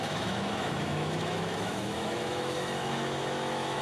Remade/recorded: remade